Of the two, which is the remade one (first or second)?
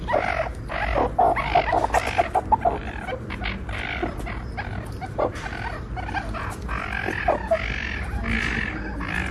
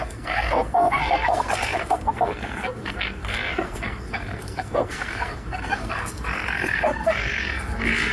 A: second